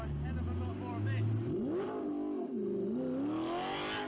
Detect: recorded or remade recorded